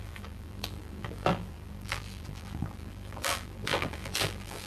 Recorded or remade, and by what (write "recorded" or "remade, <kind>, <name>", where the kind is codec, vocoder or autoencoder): remade, vocoder, BigVGAN v2